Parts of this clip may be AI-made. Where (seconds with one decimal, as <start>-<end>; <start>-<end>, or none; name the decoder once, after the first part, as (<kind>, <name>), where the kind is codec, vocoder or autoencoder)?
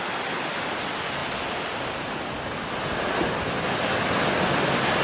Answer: none